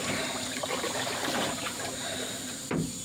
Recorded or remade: remade